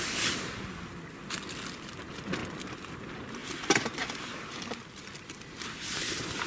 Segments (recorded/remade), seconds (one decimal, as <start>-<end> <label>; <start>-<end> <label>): 0.0-3.4 recorded; 3.4-6.5 remade